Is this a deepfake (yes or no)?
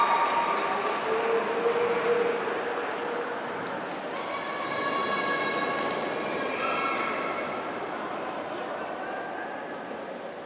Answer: no